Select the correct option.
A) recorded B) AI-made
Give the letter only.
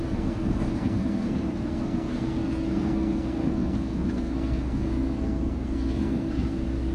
B